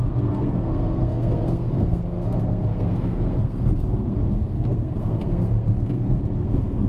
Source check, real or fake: fake